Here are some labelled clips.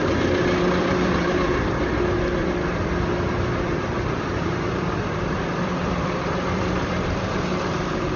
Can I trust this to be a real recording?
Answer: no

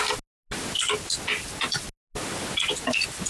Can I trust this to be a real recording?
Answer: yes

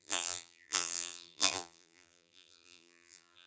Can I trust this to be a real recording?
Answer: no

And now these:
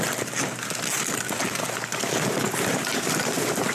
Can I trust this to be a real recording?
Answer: yes